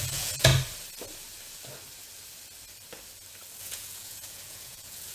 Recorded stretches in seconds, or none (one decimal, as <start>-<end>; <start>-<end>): 0.5-3.6